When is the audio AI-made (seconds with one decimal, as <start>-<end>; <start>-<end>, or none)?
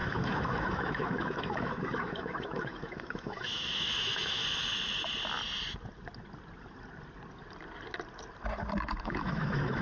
0.0-4.4; 9.0-9.8